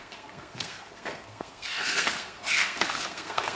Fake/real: fake